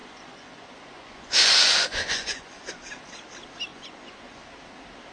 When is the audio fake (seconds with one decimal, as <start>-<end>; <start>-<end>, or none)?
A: 0.0-2.8; 3.7-4.4